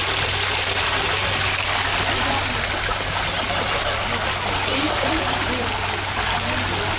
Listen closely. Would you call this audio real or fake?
real